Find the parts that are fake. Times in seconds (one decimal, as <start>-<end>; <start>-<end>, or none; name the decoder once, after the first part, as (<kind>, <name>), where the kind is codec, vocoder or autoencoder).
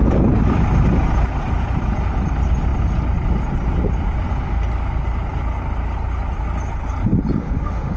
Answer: 7.4-8.0 (autoencoder, DAC-VAE)